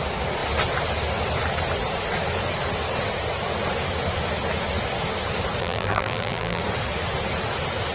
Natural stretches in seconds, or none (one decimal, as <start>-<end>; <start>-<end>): 0.0-5.6; 6.6-7.9